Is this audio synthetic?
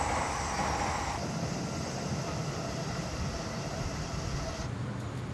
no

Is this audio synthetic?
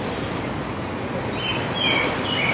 yes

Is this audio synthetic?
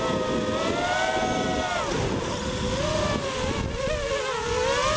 no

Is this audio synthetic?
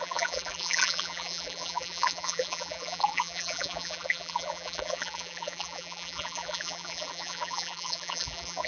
yes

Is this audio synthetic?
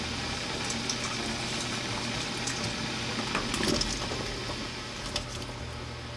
yes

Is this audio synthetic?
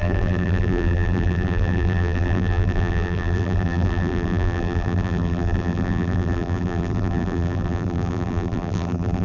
yes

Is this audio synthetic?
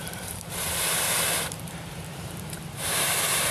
yes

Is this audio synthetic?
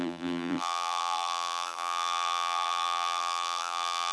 yes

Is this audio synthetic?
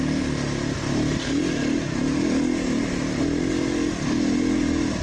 no